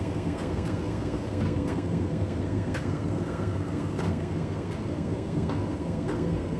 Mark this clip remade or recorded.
remade